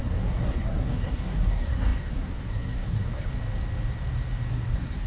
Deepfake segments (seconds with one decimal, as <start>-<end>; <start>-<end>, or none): 0.0-3.3; 4.5-5.1